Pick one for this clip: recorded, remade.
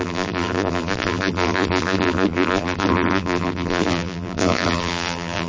remade